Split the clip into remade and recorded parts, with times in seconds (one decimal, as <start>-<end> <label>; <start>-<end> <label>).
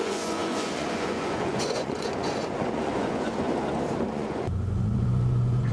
0.0-3.5 remade; 3.5-4.1 recorded; 4.1-5.7 remade